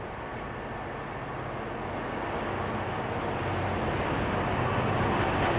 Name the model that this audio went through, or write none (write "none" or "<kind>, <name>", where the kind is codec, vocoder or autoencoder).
none